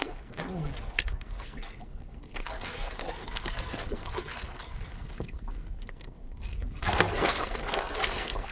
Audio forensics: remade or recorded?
remade